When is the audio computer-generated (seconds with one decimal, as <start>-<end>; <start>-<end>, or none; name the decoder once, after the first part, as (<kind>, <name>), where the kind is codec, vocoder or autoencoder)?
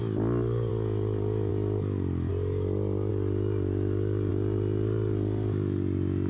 none